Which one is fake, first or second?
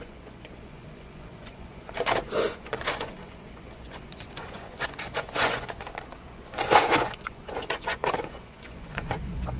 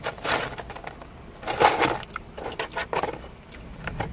first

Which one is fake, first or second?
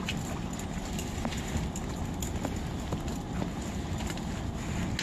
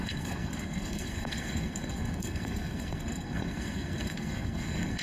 second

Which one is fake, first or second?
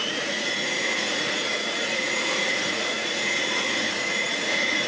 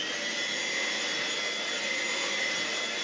first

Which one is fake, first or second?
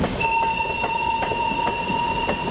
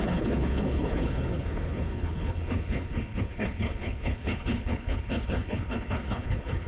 second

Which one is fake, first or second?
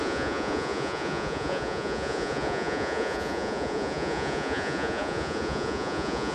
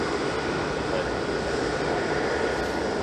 first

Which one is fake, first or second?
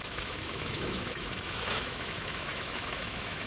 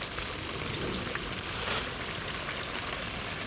first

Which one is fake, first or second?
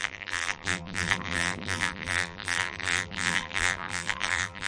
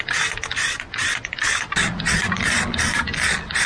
first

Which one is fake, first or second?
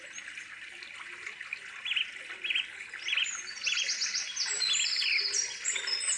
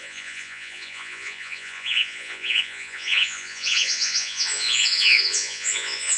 second